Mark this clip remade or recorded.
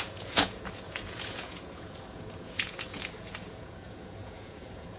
remade